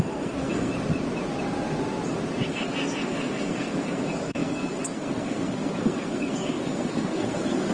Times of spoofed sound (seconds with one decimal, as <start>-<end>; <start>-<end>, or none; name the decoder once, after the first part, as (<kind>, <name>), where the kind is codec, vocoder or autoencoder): 0.0-0.7 (codec, SNAC); 2.5-7.7